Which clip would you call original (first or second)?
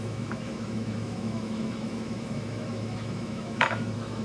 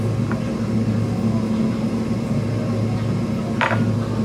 second